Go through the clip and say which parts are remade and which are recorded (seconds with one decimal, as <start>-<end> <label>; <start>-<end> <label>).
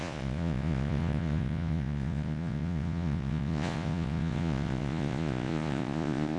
0.0-6.4 remade